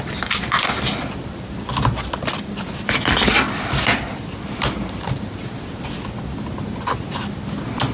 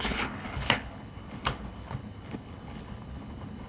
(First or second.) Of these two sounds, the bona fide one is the first